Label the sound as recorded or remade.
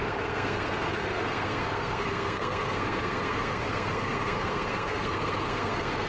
remade